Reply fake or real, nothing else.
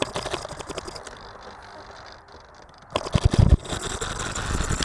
real